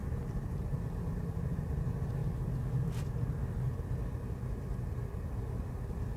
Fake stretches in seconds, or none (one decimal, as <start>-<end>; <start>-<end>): none

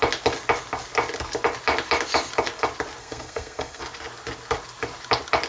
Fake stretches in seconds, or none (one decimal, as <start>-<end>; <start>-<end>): 3.0-3.8